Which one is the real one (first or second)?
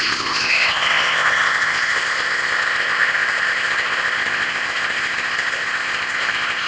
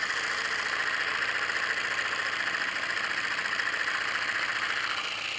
second